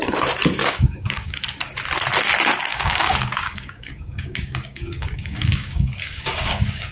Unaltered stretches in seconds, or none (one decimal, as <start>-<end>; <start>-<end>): 0.0-0.6; 1.4-2.7